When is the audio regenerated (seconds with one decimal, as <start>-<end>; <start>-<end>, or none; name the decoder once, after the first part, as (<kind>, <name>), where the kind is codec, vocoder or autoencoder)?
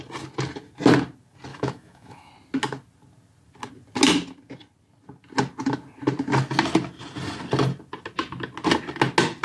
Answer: 1.5-2.3 (autoencoder, DAC-VAE)